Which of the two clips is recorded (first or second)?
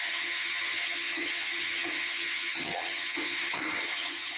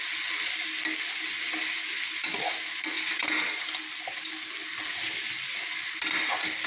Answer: second